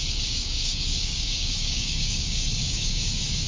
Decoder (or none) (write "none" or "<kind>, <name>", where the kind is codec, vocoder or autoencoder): codec, DAC